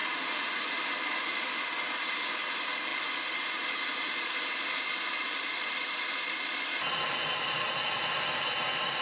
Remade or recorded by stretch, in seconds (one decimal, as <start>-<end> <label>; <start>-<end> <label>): 0.0-9.0 recorded